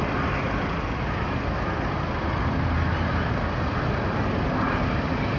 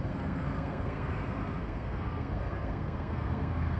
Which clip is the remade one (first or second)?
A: second